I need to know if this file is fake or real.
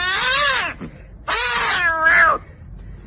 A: real